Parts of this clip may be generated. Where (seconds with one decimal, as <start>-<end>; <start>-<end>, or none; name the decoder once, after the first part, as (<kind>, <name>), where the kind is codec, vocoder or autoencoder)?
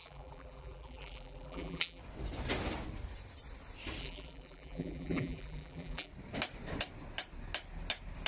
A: 0.0-2.0 (vocoder, BigVGAN v2); 4.0-6.1